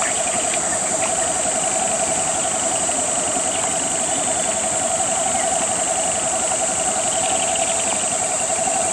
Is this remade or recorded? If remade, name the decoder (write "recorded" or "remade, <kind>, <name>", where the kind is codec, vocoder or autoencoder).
recorded